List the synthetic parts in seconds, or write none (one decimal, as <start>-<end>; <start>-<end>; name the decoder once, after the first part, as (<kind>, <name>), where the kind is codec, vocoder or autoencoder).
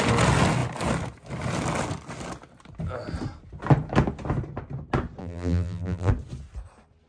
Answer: 5.2-6.1 (vocoder, BigVGAN v2)